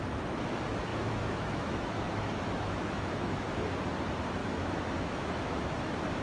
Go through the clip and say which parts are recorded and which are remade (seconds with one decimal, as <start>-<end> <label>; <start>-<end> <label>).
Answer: 0.0-0.9 recorded; 0.9-3.4 remade; 3.4-4.4 recorded; 4.4-5.7 remade; 5.7-6.2 recorded